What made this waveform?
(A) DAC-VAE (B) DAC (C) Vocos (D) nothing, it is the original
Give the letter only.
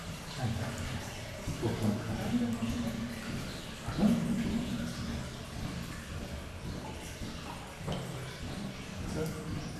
D